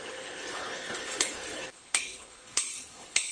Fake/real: fake